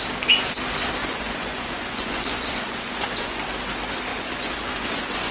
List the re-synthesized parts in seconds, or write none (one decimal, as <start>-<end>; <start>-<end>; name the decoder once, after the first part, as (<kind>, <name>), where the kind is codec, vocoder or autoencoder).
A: 1.0-3.4 (vocoder, Vocos); 4.1-5.3